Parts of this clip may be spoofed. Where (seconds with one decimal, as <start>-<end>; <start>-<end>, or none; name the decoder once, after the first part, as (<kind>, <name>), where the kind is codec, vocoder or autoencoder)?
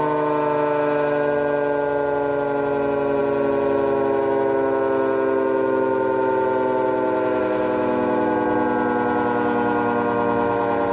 none